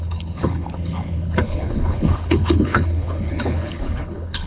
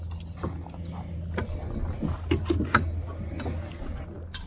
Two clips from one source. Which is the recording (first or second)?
second